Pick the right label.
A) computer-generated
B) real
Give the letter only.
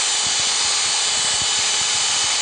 B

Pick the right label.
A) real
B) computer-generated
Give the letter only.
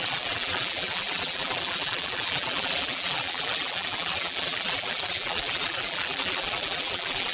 B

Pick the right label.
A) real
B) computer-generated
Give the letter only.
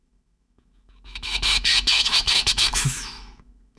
B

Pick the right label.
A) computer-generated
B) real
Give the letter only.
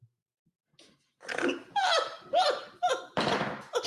A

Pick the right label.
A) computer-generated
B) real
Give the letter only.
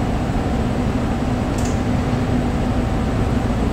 B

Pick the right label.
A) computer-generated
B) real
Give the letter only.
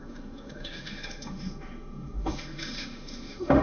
A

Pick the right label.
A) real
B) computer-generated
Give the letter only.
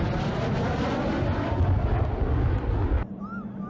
A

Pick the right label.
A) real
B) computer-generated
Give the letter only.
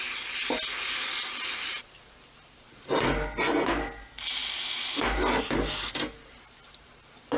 A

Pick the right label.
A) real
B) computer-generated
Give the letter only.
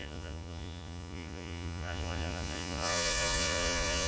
B